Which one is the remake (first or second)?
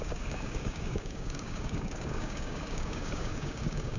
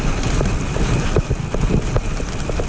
first